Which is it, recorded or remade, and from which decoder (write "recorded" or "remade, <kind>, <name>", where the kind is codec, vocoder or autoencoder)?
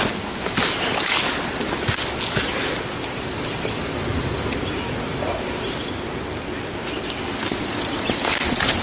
recorded